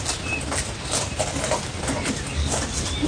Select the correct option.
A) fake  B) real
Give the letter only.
B